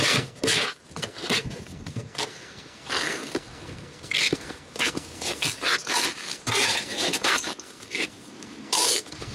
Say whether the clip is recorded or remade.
remade